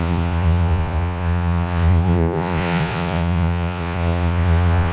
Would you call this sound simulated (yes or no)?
yes